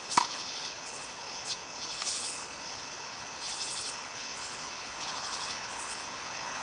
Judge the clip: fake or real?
fake